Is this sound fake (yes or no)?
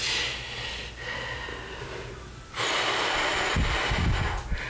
no